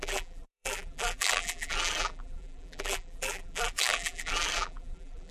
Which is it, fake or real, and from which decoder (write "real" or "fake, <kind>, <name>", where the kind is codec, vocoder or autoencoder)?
fake, vocoder, BigVGAN v2